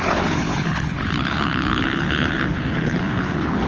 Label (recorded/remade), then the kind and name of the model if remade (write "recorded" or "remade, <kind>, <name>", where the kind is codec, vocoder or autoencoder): remade, codec, HILCodec